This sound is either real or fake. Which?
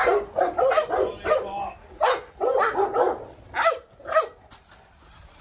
real